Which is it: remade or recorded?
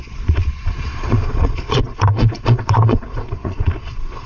remade